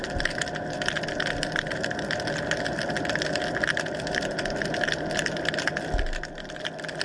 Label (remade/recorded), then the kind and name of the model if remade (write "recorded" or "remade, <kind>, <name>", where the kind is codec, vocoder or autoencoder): recorded